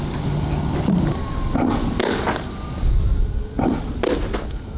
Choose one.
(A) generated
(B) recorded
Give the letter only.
B